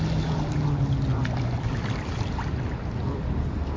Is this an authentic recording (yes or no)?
yes